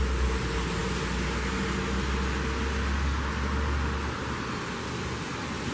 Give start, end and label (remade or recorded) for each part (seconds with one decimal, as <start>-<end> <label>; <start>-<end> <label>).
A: 0.0-5.7 recorded